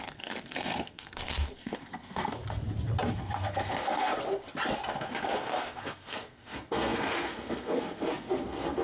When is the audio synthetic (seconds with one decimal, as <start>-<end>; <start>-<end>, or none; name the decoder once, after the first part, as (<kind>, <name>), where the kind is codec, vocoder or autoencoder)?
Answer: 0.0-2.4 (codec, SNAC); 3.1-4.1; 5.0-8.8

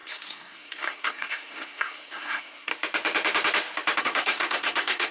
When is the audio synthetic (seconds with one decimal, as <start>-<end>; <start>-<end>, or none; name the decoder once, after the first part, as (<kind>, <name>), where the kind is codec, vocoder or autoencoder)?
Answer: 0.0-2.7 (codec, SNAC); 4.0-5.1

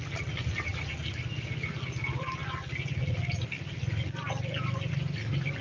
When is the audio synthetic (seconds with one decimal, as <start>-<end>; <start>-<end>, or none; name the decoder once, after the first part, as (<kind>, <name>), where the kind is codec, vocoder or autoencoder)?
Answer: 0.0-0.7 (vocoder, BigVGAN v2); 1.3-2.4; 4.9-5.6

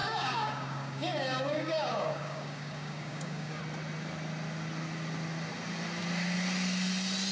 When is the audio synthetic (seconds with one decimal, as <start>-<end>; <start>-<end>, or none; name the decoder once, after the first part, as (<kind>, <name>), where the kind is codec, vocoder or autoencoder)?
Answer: 0.0-3.6 (codec, DAC)